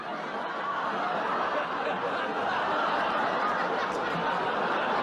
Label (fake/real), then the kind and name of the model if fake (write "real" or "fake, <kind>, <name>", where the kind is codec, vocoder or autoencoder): real